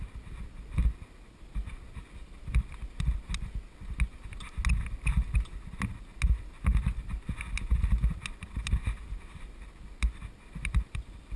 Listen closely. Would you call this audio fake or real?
real